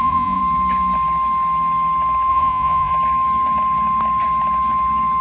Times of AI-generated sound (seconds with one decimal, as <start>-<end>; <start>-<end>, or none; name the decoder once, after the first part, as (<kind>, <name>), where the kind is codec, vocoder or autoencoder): 0.0-0.4 (vocoder, Vocos); 2.3-2.9